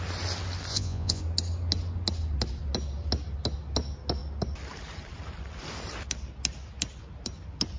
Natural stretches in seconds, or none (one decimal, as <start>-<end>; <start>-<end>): 0.0-0.7; 1.2-7.8